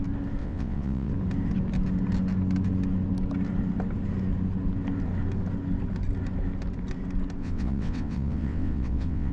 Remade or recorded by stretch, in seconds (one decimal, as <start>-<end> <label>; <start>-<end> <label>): 0.0-0.4 recorded; 0.4-1.1 remade; 1.1-7.4 recorded; 7.4-9.3 remade